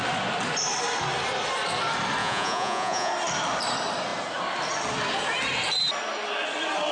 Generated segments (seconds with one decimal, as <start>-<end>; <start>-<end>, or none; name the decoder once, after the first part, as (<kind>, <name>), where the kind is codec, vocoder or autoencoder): 2.2-3.1 (vocoder, Vocos)